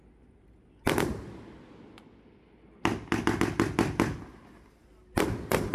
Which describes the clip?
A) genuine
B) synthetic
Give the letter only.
A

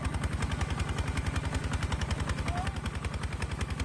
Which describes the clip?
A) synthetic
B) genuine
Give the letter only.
B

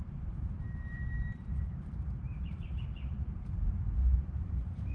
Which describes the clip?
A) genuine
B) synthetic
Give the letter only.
B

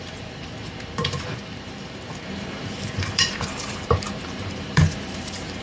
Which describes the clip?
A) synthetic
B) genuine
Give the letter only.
A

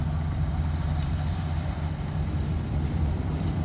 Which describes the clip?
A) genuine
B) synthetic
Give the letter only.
B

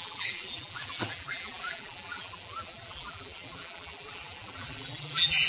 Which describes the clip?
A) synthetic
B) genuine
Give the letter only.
A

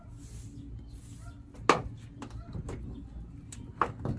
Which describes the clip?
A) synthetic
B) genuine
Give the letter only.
B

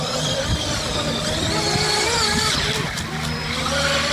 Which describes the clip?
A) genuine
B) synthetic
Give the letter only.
A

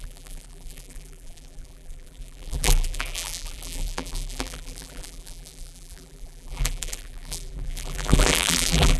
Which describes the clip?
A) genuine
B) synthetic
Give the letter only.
B